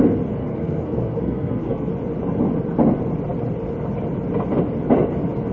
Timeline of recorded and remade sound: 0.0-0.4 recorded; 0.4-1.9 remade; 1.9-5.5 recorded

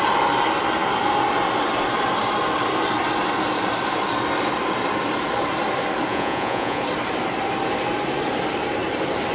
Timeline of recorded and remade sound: 0.0-6.1 recorded; 6.1-6.8 remade; 6.8-9.3 recorded

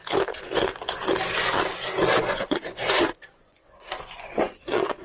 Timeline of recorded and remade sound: 0.0-2.2 recorded; 2.2-5.0 remade

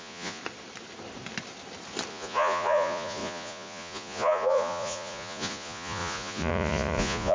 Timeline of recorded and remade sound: 0.0-0.4 remade; 0.4-2.1 recorded; 2.1-7.3 remade

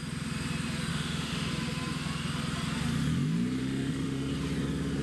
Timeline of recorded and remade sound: 0.0-0.9 recorded; 0.9-1.5 remade; 1.5-3.6 recorded; 3.6-4.3 remade; 4.3-5.0 recorded

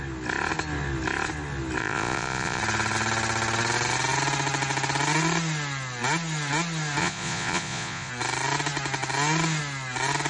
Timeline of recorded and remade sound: 0.0-1.8 recorded; 1.8-2.6 remade; 2.6-7.0 recorded; 7.0-8.1 remade; 8.1-10.3 recorded

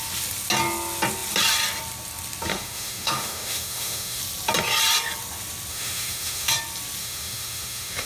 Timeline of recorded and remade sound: 0.0-2.5 recorded; 2.5-4.2 remade; 4.2-5.7 recorded; 5.7-6.5 remade; 6.5-7.0 recorded; 7.0-8.1 remade

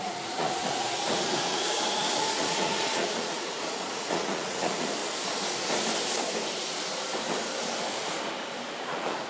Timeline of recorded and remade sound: 0.0-5.0 remade; 5.0-8.8 recorded; 8.8-9.3 remade